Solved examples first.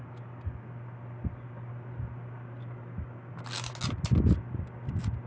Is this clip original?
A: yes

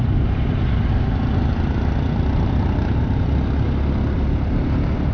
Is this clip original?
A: yes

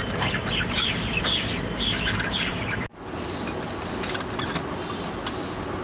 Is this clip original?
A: yes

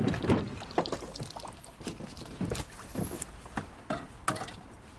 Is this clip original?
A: yes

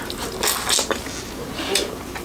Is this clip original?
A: yes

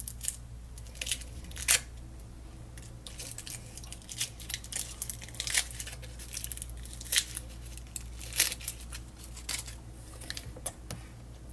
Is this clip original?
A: yes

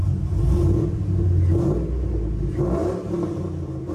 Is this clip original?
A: yes